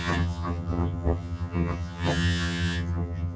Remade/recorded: remade